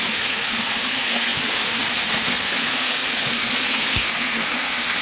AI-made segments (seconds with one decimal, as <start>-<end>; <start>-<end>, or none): 0.0-5.0